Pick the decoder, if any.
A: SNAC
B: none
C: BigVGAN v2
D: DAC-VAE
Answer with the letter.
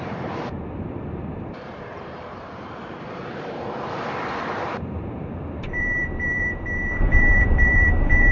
C